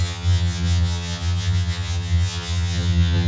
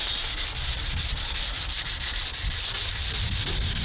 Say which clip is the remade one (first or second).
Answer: first